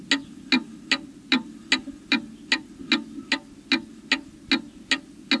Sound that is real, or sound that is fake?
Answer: real